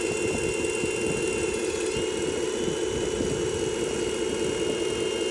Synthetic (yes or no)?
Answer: no